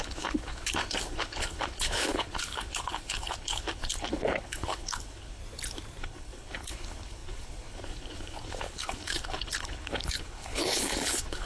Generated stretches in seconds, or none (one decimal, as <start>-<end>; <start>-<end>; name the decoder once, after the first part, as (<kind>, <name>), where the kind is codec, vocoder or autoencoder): 0.0-5.4 (codec, HILCodec); 6.0-11.5